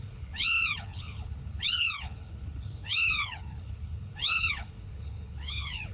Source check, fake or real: fake